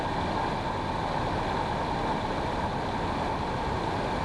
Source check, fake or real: real